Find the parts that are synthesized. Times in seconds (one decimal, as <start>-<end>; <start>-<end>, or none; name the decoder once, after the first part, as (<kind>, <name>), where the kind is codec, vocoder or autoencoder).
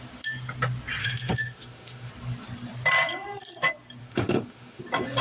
1.0-2.1 (autoencoder, DAC-VAE); 4.0-4.8